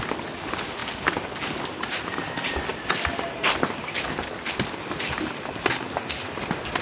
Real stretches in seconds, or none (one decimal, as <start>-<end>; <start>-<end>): 0.0-6.8